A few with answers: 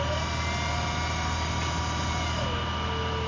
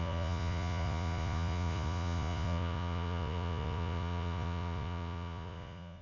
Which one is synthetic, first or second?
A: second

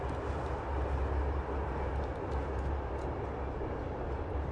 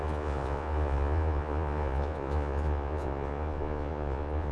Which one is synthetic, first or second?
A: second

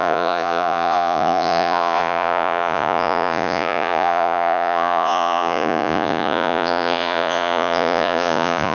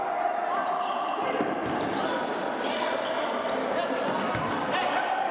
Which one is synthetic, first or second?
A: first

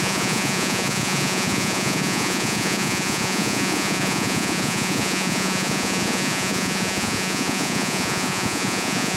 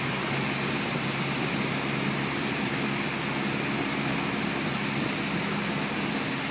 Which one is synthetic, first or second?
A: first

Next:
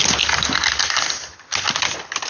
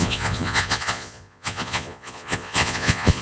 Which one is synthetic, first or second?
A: second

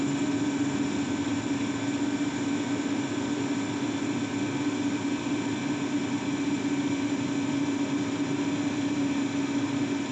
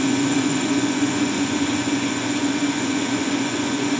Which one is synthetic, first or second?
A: second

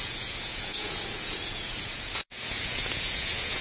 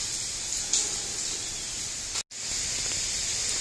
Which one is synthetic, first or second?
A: first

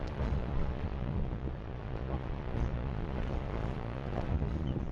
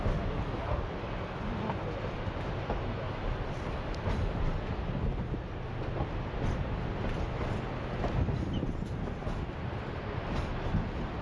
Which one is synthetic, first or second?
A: first